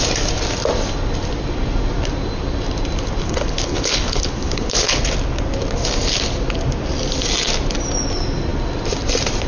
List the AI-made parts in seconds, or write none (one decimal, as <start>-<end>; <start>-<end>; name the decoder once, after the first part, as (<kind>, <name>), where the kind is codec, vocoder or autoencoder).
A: 3.2-5.0 (codec, HILCodec)